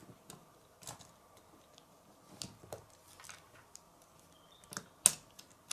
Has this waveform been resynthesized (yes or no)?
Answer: no